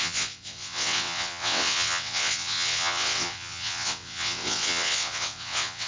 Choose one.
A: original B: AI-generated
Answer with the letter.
B